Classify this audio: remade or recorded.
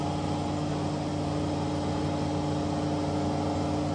recorded